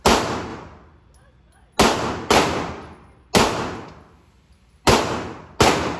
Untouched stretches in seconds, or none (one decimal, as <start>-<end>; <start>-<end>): 0.0-6.0